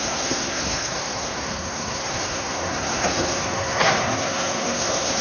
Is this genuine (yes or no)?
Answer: no